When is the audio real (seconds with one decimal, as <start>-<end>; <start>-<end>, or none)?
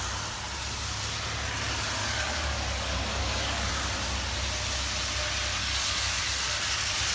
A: 0.0-2.0; 3.7-5.6; 6.2-7.1